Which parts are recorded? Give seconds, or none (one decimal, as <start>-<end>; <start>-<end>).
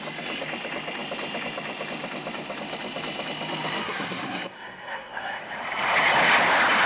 0.0-3.8; 5.4-6.9